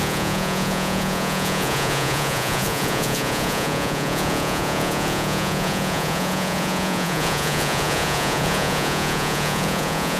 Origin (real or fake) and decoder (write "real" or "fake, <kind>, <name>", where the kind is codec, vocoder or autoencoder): fake, vocoder, Vocos